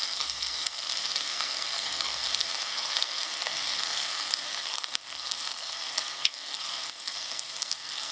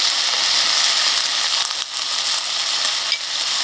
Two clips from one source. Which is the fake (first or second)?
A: first